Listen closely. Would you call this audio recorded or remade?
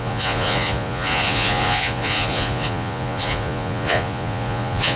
remade